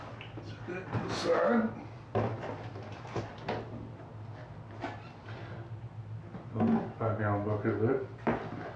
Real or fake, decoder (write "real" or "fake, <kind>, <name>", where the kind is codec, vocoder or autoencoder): real